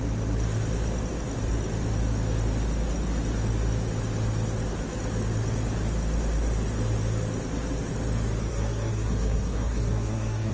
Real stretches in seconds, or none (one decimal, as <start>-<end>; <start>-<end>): 0.0-8.5